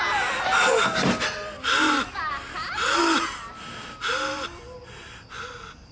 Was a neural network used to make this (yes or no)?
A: no